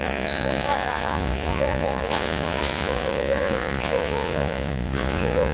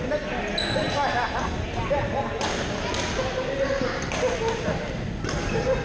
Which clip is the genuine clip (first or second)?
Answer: second